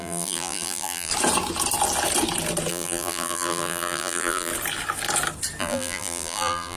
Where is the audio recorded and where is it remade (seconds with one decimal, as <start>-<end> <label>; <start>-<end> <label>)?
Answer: 0.0-1.1 remade; 1.1-2.7 recorded; 2.7-4.5 remade; 4.5-5.6 recorded; 5.6-6.8 remade